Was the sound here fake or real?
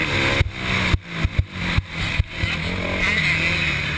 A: real